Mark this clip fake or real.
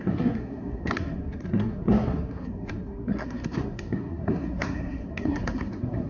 fake